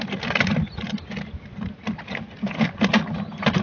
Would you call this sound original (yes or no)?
yes